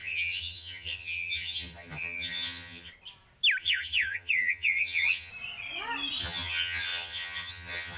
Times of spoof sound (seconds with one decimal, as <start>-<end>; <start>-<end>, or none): 0.0-2.9; 3.6-5.3; 6.2-8.0